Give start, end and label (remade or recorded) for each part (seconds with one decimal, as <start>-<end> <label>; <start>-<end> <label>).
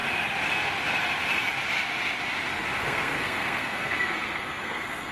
0.0-2.8 recorded; 2.8-5.1 remade